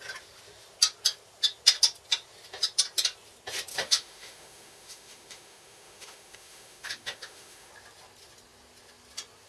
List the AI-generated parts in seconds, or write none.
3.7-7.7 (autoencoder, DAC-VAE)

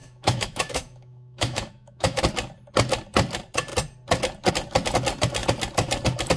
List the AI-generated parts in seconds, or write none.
0.0-2.2 (autoencoder, DAC-VAE)

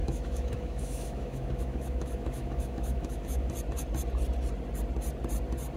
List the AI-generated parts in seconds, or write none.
0.0-3.5 (autoencoder, DAC-VAE)

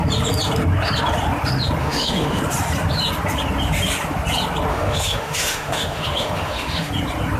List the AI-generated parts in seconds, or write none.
1.8-2.4 (autoencoder, DAC-VAE); 4.7-6.9

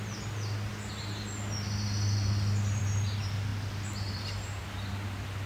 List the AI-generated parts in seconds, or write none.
none

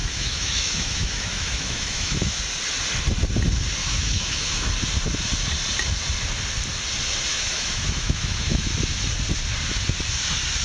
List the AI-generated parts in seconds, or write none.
0.0-2.4 (autoencoder, DAC-VAE); 3.8-4.7; 7.3-8.7

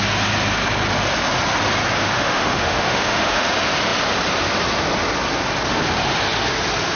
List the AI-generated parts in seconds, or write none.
2.0-3.5 (autoencoder, DAC-VAE)

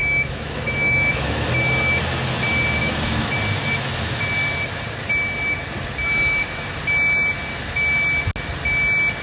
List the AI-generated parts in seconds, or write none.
0.0-1.5 (autoencoder, DAC-VAE); 2.8-3.3